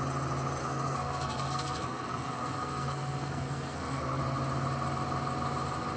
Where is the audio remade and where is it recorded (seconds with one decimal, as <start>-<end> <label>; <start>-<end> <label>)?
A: 0.0-0.6 recorded; 0.6-4.2 remade; 4.2-6.0 recorded